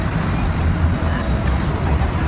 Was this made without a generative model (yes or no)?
yes